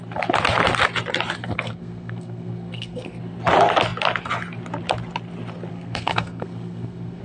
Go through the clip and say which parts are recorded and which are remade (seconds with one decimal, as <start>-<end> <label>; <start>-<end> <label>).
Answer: 0.0-1.4 recorded; 1.4-3.2 remade; 3.2-5.7 recorded; 5.7-7.2 remade